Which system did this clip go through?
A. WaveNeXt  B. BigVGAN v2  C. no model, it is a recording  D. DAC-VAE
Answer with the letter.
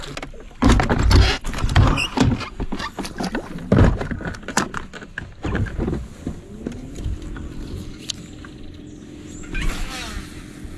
C